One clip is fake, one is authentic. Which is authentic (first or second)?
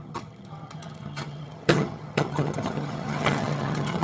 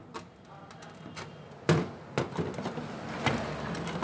second